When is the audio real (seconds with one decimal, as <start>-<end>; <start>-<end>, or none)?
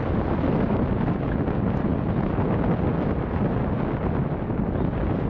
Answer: 0.0-5.3